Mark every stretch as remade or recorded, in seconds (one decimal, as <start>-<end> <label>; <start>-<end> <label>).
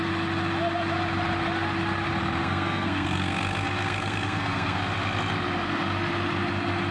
0.0-2.4 recorded; 2.4-4.8 remade; 4.8-6.9 recorded